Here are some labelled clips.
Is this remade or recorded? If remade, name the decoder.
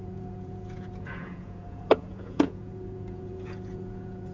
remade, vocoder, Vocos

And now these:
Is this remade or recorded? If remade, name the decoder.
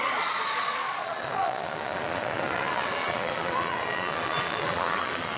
remade, vocoder, Vocos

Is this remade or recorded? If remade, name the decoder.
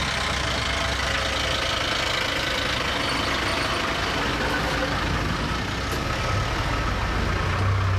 recorded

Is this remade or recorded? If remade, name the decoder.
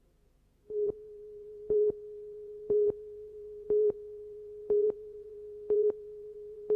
remade, vocoder, Vocos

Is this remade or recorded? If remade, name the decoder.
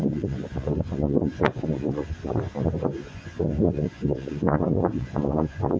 remade, vocoder, Vocos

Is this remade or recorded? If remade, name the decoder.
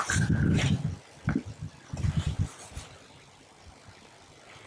recorded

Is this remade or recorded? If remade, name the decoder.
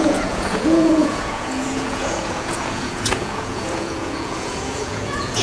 remade, vocoder, Vocos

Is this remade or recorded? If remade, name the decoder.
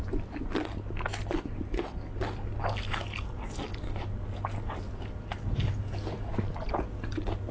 recorded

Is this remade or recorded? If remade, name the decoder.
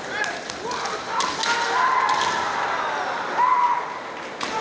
recorded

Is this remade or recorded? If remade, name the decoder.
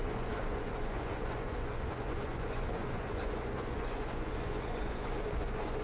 remade, vocoder, Vocos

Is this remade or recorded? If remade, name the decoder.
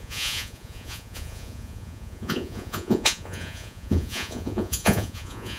remade, vocoder, Vocos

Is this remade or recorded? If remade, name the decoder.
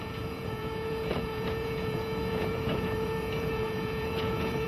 remade, vocoder, Vocos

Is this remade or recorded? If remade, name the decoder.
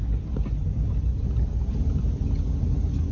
recorded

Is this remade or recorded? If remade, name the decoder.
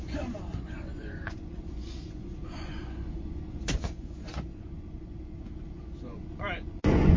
remade, vocoder, Vocos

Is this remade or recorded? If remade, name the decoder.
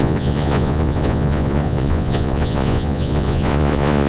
remade, vocoder, Vocos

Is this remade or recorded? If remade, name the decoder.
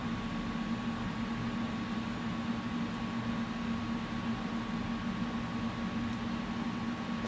recorded